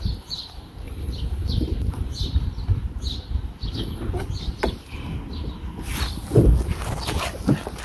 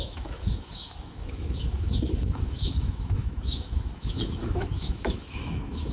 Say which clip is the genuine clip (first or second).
first